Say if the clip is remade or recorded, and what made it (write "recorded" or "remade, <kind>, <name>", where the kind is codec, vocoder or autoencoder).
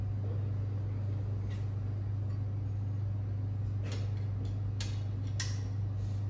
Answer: recorded